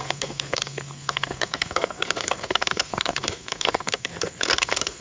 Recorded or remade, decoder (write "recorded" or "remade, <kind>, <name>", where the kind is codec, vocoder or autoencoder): remade, codec, SNAC